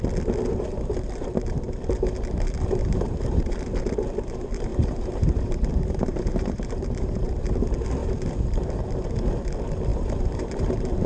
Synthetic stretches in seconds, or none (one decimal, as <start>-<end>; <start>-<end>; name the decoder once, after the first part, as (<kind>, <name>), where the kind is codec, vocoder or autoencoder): 2.8-3.6 (vocoder, BigVGAN v2); 4.7-7.5; 8.0-8.7; 9.9-11.1